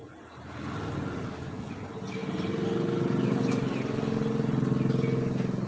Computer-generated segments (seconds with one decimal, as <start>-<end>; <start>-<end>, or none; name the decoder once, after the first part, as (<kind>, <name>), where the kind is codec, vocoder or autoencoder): none